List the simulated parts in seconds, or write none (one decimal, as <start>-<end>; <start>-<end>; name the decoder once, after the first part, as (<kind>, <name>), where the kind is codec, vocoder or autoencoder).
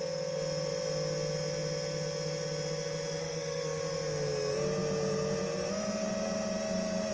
3.2-3.8 (codec, SNAC)